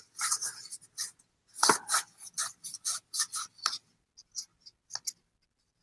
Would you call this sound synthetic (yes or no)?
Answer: no